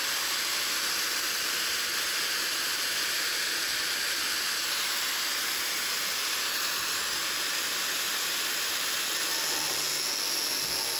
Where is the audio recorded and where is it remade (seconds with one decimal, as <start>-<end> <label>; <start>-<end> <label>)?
0.0-11.0 recorded